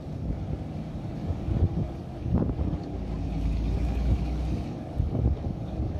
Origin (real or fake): fake